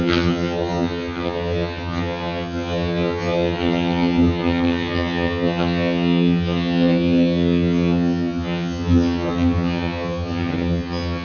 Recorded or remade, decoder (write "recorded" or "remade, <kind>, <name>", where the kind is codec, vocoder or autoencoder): remade, vocoder, HiFi-GAN